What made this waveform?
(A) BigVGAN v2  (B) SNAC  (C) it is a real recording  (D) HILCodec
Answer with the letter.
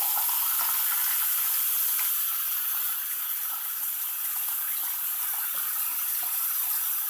A